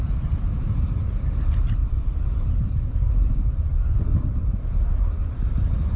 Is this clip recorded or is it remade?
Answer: recorded